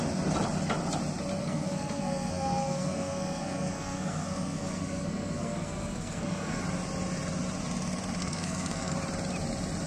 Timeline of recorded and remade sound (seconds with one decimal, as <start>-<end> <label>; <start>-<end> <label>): 0.0-1.4 recorded; 1.4-6.6 remade; 6.6-8.2 recorded; 8.2-8.9 remade; 8.9-9.9 recorded